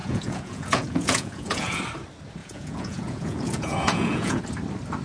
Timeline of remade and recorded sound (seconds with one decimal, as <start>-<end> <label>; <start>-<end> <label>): 0.0-1.8 remade; 1.8-2.4 recorded; 2.4-4.4 remade; 4.4-5.0 recorded